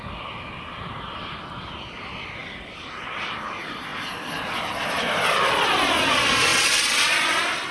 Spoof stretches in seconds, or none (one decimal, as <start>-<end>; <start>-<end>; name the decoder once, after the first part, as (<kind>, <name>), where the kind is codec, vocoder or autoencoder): none